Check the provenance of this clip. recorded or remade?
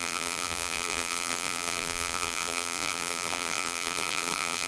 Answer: remade